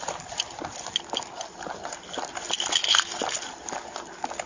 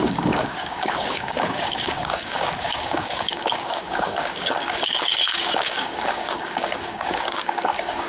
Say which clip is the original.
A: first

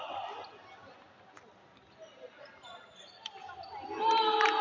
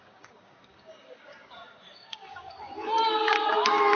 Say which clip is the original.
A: first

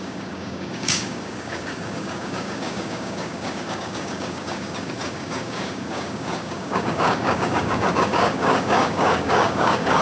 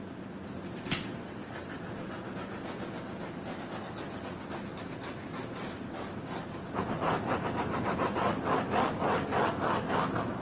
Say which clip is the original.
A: second